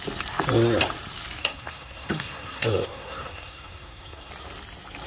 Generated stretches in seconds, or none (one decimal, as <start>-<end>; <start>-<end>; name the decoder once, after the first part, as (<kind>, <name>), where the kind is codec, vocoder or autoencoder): 1.4-4.3 (codec, SNAC)